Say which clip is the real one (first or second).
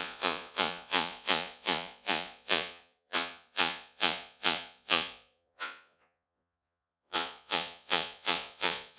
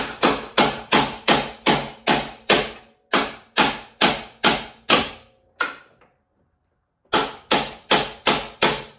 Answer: second